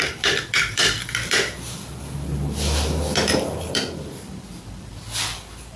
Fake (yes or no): yes